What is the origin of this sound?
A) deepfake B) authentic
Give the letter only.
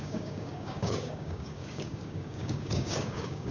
A